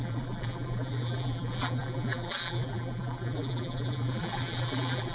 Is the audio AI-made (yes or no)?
yes